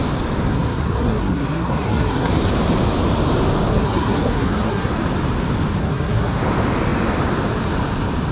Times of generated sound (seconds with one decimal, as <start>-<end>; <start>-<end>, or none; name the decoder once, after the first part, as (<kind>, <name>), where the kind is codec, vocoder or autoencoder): 0.5-2.3 (codec, SNAC); 3.7-4.9; 5.8-6.4

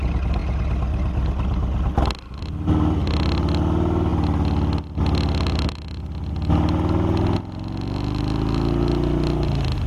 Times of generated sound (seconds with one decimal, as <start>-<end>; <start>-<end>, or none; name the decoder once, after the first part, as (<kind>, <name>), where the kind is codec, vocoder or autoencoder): none